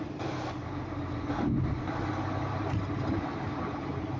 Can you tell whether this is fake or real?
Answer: real